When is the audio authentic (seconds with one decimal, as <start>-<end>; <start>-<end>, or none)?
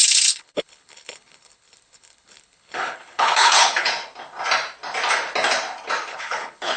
3.9-6.1